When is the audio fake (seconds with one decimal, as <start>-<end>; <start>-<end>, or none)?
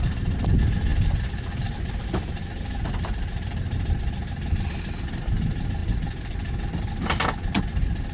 none